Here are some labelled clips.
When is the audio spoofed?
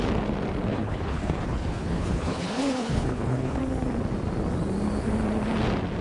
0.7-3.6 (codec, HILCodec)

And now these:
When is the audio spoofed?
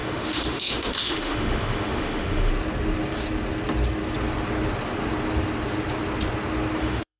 0.0-2.5 (autoencoder, DAC-VAE); 6.8-7.2